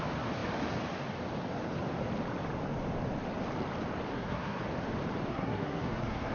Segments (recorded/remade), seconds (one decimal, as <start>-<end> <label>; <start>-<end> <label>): 0.0-4.1 recorded; 4.1-4.6 remade; 4.6-5.3 recorded; 5.3-6.3 remade